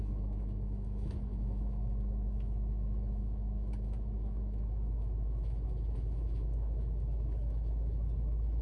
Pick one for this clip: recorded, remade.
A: remade